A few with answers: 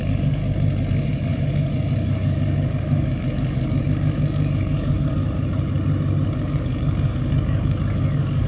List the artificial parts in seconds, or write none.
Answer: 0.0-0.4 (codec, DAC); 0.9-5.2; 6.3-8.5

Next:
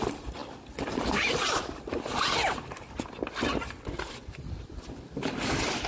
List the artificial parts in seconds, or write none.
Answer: none

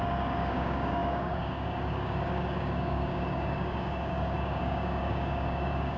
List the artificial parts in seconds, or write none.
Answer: 0.0-6.0 (codec, DAC)

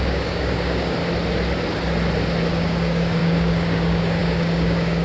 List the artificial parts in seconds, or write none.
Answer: 0.0-1.0 (codec, DAC); 2.5-5.0

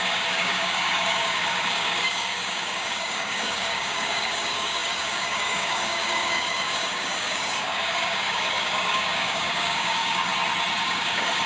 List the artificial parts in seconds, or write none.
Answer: 0.0-10.3 (codec, DAC); 10.8-11.5

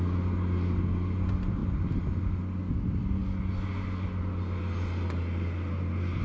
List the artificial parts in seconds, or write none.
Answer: none

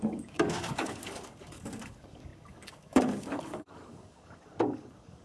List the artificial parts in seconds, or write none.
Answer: 0.0-5.2 (codec, DAC)

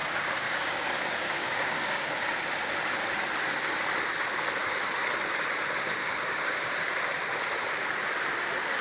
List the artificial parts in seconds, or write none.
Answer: 0.0-2.1 (codec, DAC); 6.0-6.7